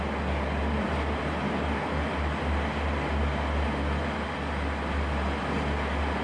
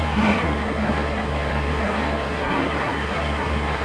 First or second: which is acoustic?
first